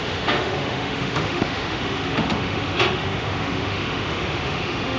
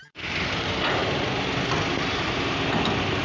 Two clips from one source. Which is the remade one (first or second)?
first